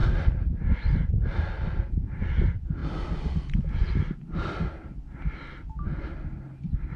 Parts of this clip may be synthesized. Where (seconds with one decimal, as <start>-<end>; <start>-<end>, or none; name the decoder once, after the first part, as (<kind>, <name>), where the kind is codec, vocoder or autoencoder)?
none